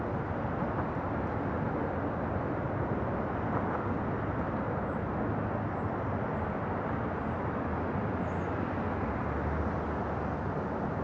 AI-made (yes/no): no